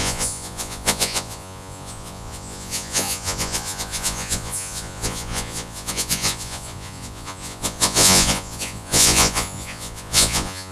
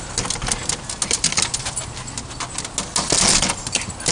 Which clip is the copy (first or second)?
first